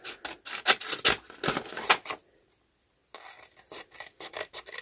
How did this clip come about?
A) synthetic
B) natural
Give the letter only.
B